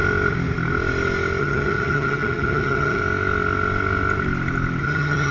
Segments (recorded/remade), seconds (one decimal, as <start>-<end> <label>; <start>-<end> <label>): 0.0-1.4 recorded; 1.4-3.0 remade; 3.0-4.8 recorded; 4.8-5.3 remade